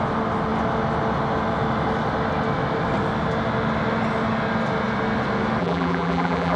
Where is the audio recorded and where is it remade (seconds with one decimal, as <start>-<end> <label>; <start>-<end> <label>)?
0.0-5.6 recorded; 5.6-6.6 remade